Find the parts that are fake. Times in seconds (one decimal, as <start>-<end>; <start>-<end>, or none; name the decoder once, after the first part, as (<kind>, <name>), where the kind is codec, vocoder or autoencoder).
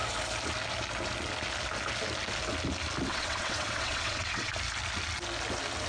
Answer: 3.1-4.5 (vocoder, WaveNeXt)